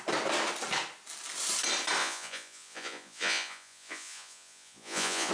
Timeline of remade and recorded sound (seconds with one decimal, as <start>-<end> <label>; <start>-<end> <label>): 0.0-2.0 recorded; 2.0-5.3 remade